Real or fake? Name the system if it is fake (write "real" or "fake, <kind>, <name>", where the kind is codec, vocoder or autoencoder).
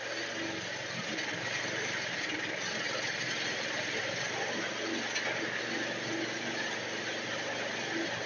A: real